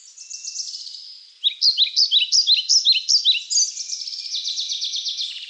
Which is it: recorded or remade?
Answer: recorded